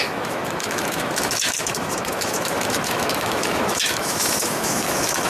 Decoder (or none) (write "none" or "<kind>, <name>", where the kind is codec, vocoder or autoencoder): autoencoder, DAC-VAE